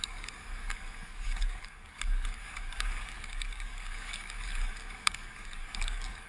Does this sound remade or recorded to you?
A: remade